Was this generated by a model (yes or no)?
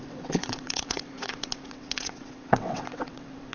yes